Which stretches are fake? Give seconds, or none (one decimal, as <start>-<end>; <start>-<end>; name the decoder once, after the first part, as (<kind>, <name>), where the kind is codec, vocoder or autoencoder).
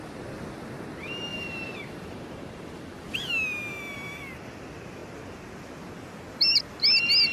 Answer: 1.3-2.4 (vocoder, BigVGAN v2)